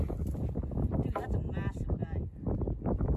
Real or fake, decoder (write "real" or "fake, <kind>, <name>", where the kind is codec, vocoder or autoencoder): real